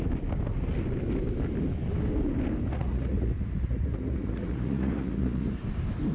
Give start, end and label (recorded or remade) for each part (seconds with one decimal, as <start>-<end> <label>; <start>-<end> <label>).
0.0-2.7 recorded; 2.7-5.6 remade; 5.6-6.1 recorded